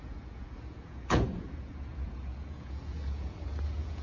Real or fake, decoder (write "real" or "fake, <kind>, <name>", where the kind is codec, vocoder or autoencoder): fake, vocoder, Vocos